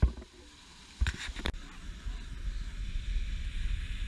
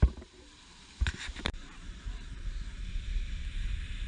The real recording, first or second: first